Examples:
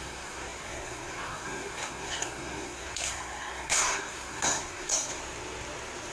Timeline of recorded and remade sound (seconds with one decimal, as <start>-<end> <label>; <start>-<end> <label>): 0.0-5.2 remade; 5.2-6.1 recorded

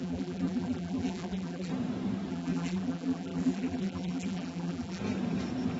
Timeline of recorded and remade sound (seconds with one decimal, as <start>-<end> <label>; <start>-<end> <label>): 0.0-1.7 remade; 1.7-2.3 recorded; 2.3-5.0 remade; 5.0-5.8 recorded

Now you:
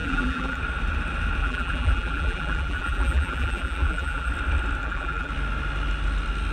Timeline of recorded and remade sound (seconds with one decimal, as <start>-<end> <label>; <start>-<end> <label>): 0.0-0.6 remade; 0.6-1.4 recorded; 1.4-4.3 remade; 4.3-4.8 recorded; 4.8-5.3 remade; 5.3-6.5 recorded

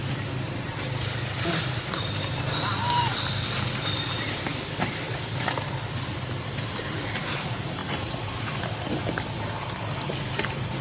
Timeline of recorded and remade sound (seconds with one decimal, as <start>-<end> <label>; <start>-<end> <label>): 0.0-10.8 remade

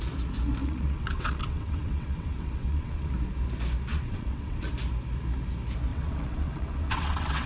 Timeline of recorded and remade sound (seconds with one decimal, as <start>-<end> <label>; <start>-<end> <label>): 0.0-0.6 recorded; 0.6-3.1 remade; 3.1-3.9 recorded; 3.9-4.7 remade; 4.7-5.9 recorded; 5.9-7.5 remade

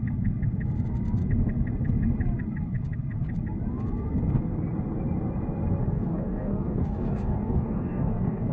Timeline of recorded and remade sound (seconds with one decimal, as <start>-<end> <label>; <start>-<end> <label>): 0.0-5.8 recorded; 5.8-8.5 remade